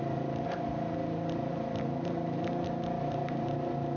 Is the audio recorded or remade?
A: recorded